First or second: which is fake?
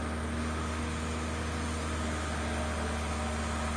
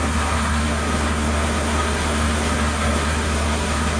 second